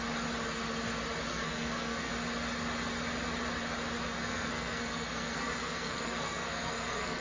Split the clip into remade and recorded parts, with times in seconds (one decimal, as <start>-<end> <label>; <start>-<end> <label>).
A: 0.0-1.3 recorded; 1.3-2.1 remade; 2.1-4.2 recorded; 4.2-7.2 remade